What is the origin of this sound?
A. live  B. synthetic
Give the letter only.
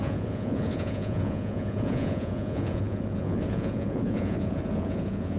B